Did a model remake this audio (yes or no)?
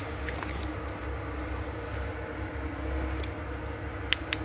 no